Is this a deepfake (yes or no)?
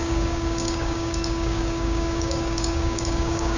yes